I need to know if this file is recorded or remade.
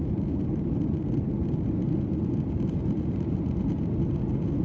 recorded